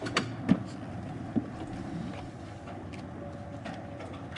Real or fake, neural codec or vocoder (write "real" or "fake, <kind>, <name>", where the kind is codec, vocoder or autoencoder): real